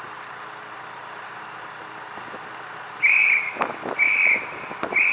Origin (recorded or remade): remade